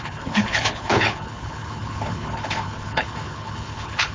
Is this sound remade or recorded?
remade